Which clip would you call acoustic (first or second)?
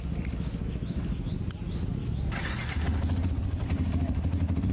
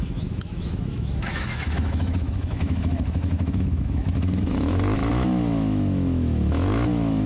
first